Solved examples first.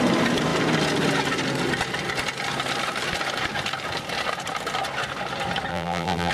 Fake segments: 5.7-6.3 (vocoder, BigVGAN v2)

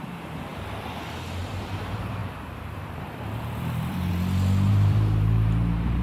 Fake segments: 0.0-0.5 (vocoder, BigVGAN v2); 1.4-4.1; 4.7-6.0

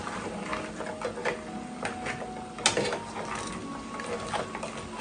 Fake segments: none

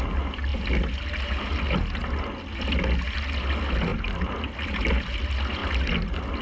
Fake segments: none